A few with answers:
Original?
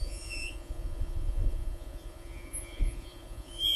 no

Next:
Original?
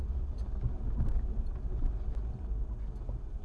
yes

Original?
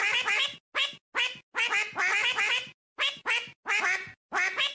yes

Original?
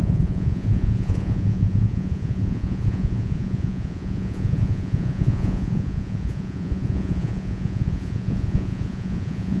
no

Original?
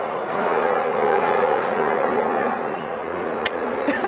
no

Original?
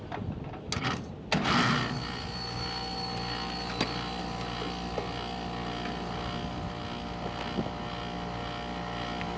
yes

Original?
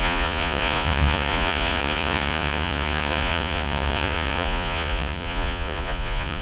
no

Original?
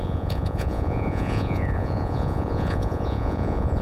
no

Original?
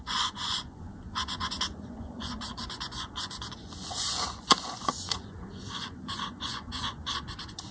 no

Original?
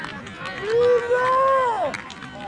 yes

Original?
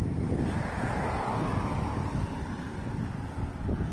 yes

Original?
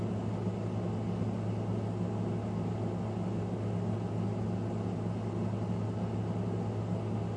yes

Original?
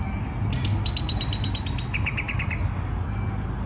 yes